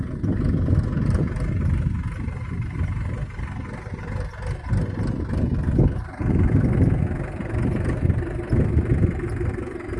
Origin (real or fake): real